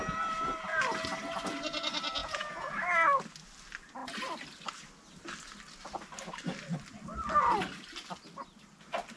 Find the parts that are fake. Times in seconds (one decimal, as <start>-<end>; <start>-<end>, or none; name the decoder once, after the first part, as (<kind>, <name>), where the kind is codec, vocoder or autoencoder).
2.2-2.7 (vocoder, Vocos)